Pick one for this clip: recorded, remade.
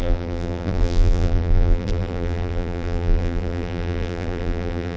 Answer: remade